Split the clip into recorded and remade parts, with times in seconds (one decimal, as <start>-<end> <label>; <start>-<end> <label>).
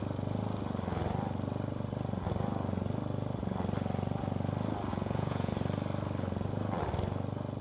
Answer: 0.0-4.9 recorded; 4.9-5.5 remade; 5.5-7.6 recorded